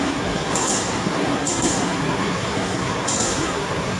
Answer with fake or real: fake